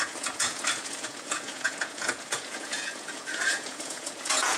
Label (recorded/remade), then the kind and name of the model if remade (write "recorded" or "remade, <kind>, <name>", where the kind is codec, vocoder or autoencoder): remade, vocoder, Vocos